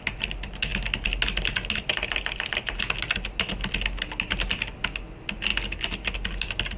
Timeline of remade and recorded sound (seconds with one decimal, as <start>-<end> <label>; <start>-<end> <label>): 0.0-6.8 recorded